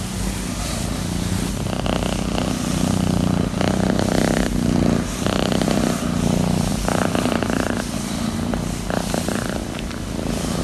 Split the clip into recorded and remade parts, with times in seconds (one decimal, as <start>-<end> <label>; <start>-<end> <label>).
0.0-6.7 recorded; 6.7-10.6 remade